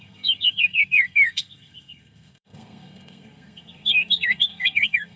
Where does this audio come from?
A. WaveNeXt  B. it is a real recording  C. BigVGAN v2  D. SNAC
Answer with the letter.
D